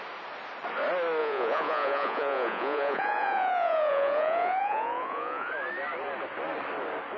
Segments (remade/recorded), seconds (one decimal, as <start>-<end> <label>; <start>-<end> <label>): 0.0-1.2 recorded; 1.2-5.5 remade; 5.5-7.2 recorded